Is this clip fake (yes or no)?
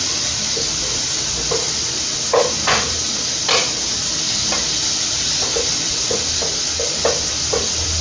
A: yes